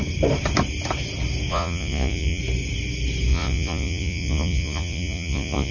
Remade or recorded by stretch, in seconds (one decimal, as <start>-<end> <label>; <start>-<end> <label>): 0.0-1.5 recorded; 1.5-2.4 remade; 2.4-3.3 recorded; 3.3-5.7 remade